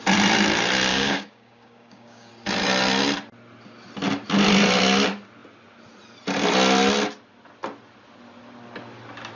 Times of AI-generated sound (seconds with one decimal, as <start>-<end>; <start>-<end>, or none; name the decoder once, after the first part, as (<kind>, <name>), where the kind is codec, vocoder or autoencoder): 0.9-2.3 (codec, DAC)